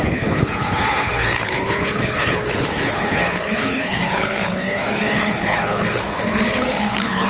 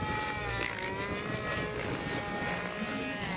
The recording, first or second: second